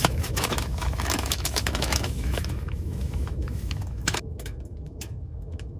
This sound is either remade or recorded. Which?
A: remade